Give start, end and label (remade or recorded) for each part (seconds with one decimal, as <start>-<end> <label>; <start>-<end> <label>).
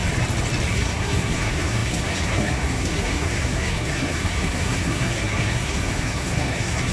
0.0-0.7 recorded; 0.7-6.9 remade